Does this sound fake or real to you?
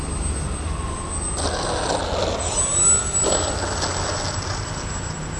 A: real